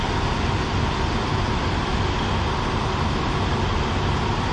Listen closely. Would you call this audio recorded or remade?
recorded